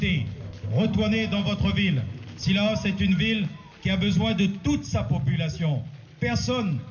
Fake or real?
real